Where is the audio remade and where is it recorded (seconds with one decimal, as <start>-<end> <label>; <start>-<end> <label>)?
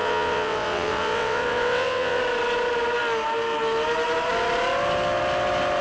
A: 0.0-2.2 remade; 2.2-5.8 recorded